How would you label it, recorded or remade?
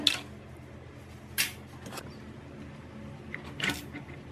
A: recorded